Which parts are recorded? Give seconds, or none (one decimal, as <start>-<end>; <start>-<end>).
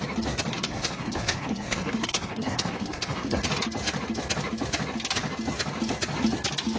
0.0-0.5; 3.4-6.8